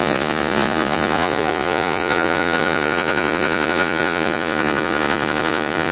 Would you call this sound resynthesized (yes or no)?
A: yes